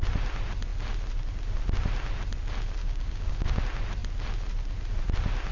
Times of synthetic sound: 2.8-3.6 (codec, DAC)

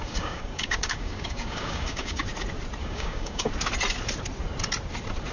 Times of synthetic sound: 0.0-2.2 (codec, DAC); 2.8-3.5

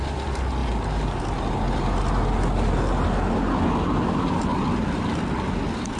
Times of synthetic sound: none

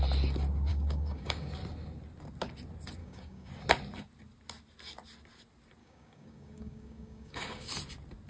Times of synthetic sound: 0.7-1.5 (codec, DAC); 3.0-3.5; 5.8-7.7

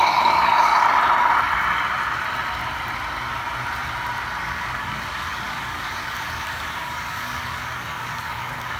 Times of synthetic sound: 0.0-0.7 (codec, DAC); 4.5-8.8

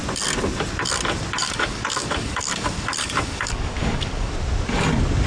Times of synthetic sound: 1.4-4.3 (codec, DAC)

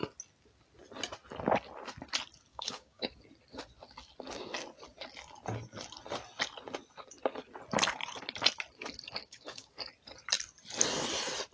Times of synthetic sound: 2.5-3.1 (codec, DAC); 9.2-9.7

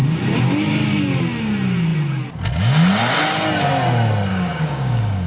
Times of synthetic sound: 4.3-5.3 (codec, DAC)